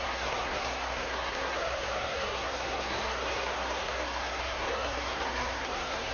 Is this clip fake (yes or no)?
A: yes